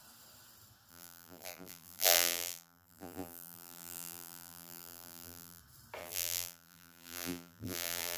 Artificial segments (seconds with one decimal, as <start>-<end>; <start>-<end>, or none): 0.9-5.6; 6.0-8.2